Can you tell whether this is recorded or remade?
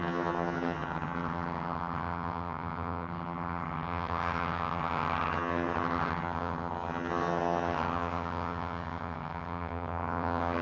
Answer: remade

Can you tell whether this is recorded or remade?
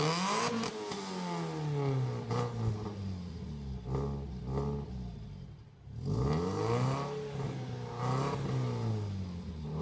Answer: recorded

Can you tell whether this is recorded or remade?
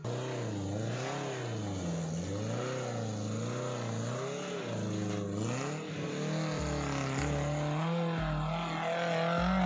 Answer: recorded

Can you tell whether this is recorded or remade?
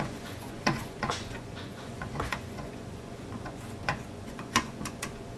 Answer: remade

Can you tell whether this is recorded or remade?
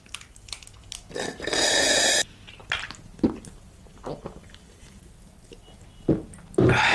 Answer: recorded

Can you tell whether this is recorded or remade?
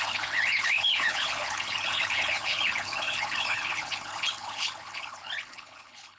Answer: remade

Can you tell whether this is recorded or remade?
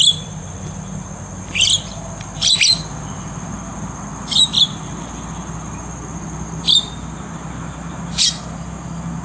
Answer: remade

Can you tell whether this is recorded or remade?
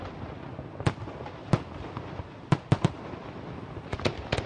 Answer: remade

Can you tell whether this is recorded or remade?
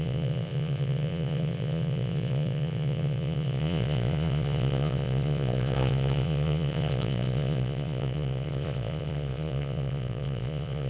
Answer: remade